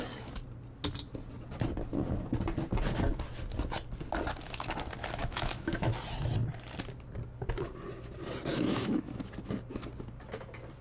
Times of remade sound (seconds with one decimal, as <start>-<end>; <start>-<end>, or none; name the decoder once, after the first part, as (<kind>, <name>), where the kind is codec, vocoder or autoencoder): 5.2-5.9 (autoencoder, DAC-VAE); 8.5-9.3